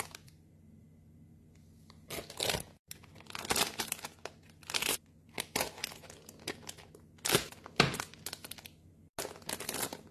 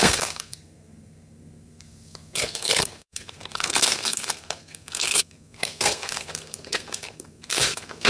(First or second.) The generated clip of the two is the second